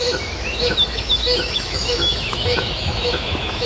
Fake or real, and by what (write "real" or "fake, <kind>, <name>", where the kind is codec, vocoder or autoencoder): fake, autoencoder, DAC-VAE